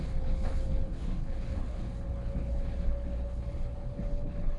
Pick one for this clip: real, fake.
fake